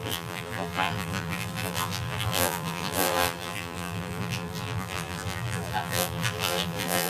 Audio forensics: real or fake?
fake